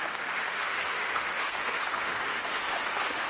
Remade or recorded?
remade